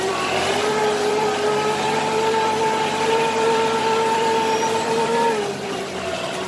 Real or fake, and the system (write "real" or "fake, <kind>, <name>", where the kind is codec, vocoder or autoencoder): fake, vocoder, BigVGAN v2